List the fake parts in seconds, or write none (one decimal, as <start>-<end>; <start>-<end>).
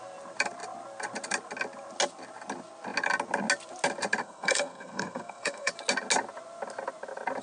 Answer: 4.2-5.7